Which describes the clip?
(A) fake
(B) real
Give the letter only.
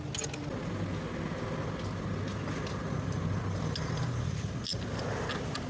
B